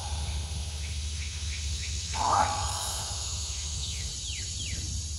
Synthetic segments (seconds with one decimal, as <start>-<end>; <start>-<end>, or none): 0.0-4.1